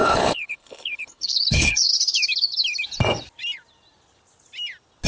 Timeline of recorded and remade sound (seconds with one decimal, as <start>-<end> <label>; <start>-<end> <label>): 0.0-1.9 remade; 1.9-5.1 recorded